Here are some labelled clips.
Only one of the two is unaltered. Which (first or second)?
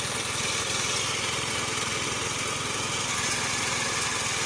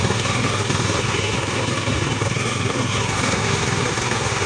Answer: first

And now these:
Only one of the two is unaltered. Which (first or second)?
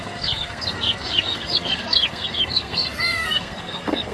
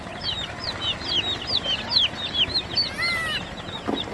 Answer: second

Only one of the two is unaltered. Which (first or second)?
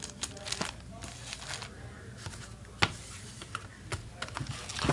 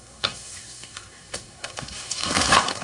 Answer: first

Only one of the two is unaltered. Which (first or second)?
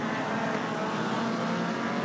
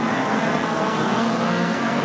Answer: first